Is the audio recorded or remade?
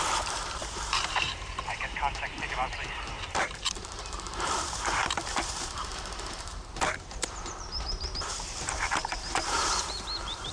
remade